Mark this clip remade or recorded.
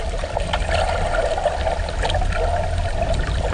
recorded